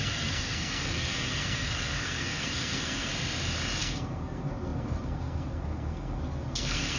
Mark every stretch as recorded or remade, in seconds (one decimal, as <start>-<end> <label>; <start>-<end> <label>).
0.0-3.1 remade; 3.1-3.8 recorded; 3.8-7.0 remade

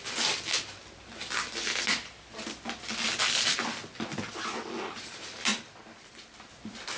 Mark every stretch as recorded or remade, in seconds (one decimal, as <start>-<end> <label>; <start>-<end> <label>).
0.0-7.0 recorded

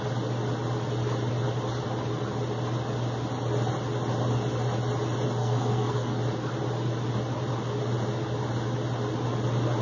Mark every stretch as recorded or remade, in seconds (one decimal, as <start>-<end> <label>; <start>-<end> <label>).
0.0-5.4 recorded; 5.4-6.2 remade; 6.2-9.8 recorded

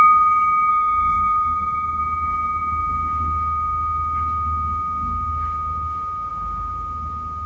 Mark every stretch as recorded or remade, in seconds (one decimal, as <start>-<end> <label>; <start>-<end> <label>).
0.0-0.7 recorded; 0.7-2.0 remade; 2.0-7.5 recorded

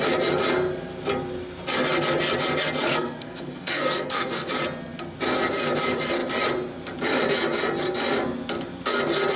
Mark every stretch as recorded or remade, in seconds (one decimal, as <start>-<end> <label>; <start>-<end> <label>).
0.0-2.9 recorded; 2.9-4.5 remade; 4.5-9.4 recorded